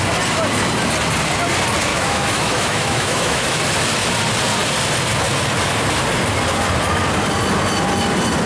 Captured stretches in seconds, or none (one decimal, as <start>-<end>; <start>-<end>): 0.0-1.9; 3.6-8.5